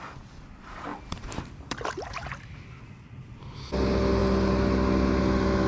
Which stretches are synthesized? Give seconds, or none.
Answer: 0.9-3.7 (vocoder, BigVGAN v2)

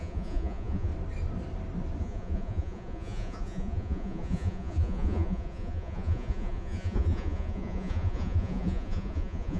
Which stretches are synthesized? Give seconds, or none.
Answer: 0.0-0.9 (vocoder, Vocos); 2.0-9.6

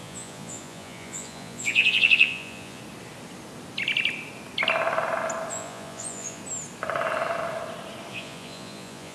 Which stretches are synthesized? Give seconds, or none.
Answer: 0.0-2.8 (vocoder, Vocos); 5.5-6.4; 8.1-9.1

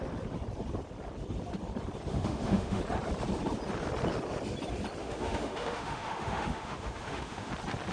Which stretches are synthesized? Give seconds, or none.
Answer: 2.1-2.8 (autoencoder, DAC-VAE); 5.0-7.5

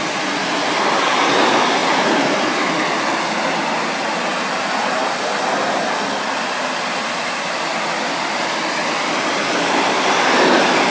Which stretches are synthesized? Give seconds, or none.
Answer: none

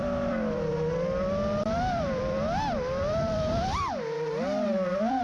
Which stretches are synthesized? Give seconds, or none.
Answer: 0.0-0.7 (vocoder, BigVGAN v2); 1.6-5.2

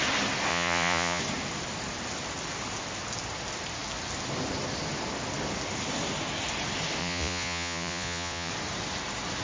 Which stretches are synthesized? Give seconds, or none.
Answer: 0.5-1.2 (vocoder, Vocos); 7.0-8.5

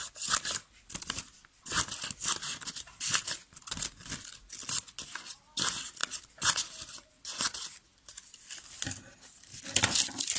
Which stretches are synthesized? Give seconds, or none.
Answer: 0.0-4.4 (vocoder, BigVGAN v2); 6.0-6.6; 7.9-9.0; 9.5-10.4